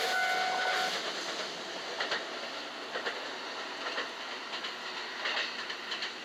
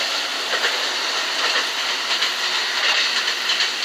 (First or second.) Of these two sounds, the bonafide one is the first